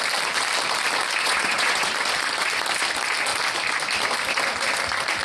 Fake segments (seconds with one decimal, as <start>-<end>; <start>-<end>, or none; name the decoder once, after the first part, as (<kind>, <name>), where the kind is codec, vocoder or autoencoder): 1.2-1.9 (vocoder, Vocos)